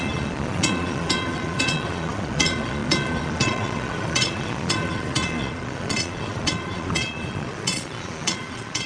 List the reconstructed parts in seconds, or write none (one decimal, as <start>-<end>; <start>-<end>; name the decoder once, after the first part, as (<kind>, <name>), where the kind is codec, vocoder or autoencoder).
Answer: 0.0-8.9 (vocoder, Vocos)

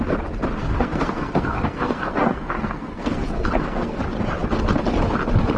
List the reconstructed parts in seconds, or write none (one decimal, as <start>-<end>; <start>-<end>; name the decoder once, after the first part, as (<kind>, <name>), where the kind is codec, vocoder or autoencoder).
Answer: 0.6-4.0 (codec, SNAC)

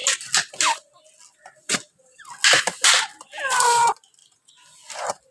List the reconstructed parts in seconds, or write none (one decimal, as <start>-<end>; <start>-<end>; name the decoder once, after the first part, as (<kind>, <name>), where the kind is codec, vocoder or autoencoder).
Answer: none

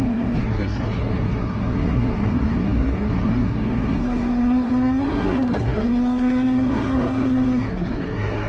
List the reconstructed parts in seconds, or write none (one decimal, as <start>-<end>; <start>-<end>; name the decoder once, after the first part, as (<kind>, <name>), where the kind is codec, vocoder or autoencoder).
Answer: 0.0-8.5 (codec, SNAC)

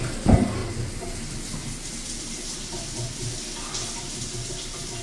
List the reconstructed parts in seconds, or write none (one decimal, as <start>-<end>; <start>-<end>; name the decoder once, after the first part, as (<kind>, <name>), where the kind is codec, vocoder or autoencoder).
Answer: none

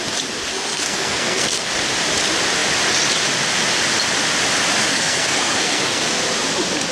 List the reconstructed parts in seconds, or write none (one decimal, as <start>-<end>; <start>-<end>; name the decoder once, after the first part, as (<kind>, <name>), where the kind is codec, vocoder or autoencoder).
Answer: 0.5-1.7 (codec, SNAC); 4.9-6.2

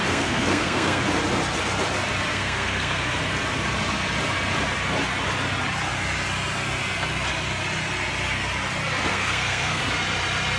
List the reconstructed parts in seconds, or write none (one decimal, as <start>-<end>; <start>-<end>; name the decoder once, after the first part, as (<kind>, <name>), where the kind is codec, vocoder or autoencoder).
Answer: 0.0-1.0 (codec, SNAC); 2.3-3.2; 9.1-9.8

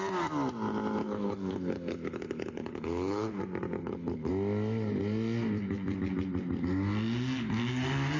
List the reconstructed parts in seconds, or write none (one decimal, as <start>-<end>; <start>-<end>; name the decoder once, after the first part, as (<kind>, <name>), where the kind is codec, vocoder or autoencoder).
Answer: 1.0-3.4 (codec, HILCodec); 3.8-4.3